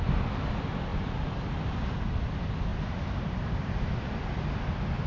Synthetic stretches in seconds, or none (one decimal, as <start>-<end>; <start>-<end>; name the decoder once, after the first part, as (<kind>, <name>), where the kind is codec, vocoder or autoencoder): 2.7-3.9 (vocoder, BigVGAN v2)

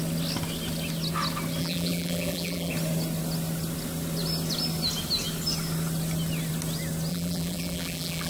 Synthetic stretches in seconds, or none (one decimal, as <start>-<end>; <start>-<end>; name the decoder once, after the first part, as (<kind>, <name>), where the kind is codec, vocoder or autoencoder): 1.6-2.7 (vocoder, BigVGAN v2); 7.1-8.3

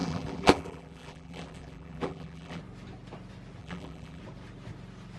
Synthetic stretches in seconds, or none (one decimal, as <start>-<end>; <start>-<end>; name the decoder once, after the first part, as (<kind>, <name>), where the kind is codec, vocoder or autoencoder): 0.0-2.6 (vocoder, BigVGAN v2); 3.6-4.2

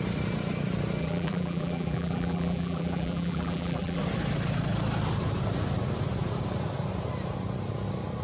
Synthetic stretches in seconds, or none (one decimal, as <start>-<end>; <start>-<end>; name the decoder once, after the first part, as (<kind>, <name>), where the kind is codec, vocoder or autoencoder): 1.0-4.0 (vocoder, BigVGAN v2)

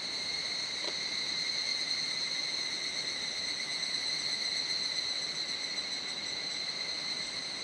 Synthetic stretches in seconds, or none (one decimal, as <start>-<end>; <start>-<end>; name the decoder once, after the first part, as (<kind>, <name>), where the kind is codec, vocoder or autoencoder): 0.0-1.7 (vocoder, BigVGAN v2); 6.3-7.6

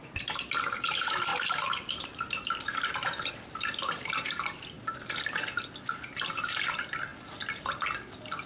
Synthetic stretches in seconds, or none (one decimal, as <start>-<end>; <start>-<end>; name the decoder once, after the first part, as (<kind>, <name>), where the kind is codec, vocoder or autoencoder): 0.0-0.5 (vocoder, BigVGAN v2); 1.3-4.4

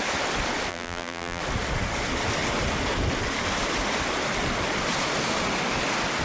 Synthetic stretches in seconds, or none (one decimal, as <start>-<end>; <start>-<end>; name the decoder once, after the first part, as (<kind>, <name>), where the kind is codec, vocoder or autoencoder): 0.7-1.4 (vocoder, BigVGAN v2)